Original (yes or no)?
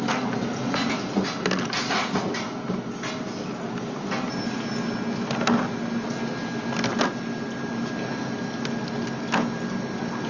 yes